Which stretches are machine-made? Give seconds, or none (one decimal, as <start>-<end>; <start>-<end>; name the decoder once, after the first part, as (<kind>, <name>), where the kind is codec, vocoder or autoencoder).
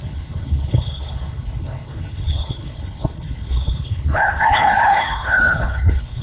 0.0-6.2 (codec, HILCodec)